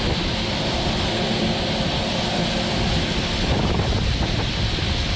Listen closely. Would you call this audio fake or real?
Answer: real